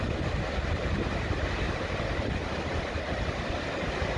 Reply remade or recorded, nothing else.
recorded